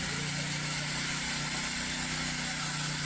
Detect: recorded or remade recorded